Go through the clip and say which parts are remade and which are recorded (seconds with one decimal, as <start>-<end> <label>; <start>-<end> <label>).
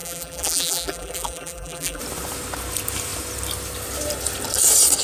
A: 0.0-2.0 remade; 2.0-5.0 recorded